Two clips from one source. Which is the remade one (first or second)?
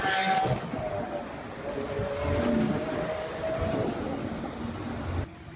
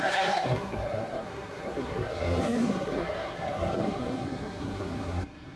second